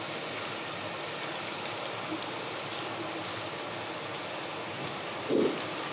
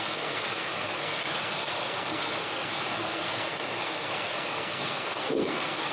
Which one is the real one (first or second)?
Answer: first